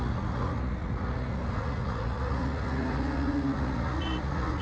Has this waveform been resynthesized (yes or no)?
yes